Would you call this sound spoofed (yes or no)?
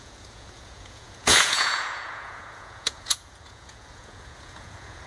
yes